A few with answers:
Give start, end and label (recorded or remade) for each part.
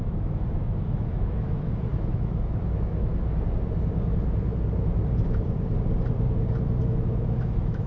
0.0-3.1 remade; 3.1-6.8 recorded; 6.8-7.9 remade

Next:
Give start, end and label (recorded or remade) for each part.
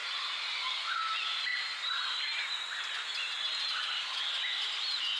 0.0-1.0 remade; 1.0-1.5 recorded; 1.5-4.2 remade; 4.2-5.2 recorded